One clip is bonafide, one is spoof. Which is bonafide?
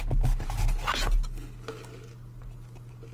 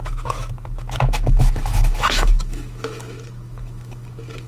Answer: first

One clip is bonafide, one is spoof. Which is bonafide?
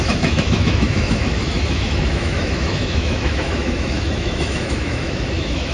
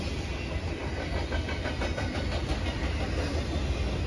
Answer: second